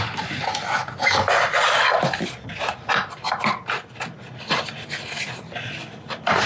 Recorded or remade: recorded